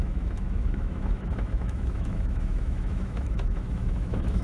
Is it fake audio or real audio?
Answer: fake